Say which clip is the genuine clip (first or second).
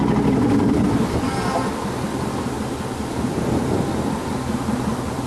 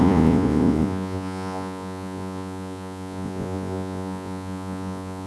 first